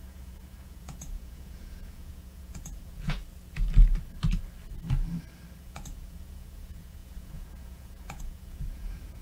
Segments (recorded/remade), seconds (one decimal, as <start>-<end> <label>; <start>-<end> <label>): 0.0-3.2 remade; 3.2-5.6 recorded; 5.6-9.2 remade